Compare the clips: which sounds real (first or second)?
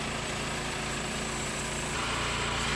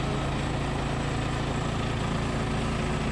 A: second